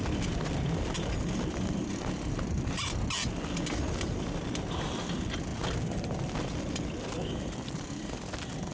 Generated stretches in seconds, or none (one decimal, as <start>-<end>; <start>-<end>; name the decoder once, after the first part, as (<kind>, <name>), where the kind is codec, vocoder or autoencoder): none